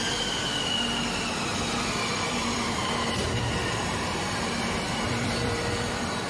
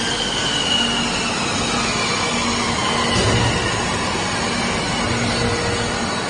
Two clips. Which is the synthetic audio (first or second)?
first